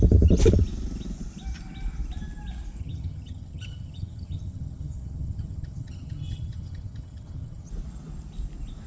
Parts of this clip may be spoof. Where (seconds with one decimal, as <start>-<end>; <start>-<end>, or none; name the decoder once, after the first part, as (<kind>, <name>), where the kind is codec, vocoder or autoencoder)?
2.8-7.7 (vocoder, HiFi-GAN)